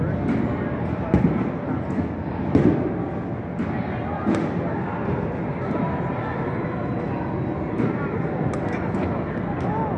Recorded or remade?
recorded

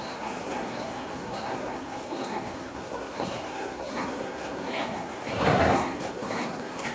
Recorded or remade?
remade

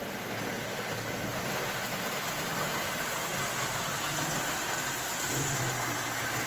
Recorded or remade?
recorded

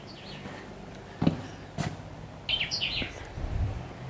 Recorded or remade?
recorded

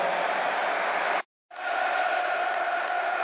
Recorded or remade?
recorded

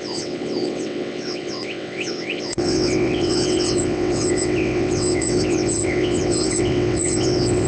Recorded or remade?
remade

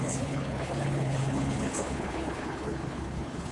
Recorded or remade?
remade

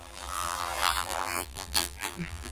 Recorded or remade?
remade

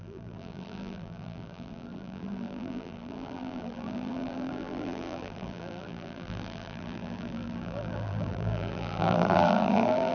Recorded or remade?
remade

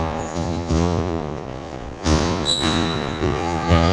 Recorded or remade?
remade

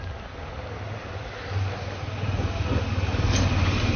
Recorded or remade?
recorded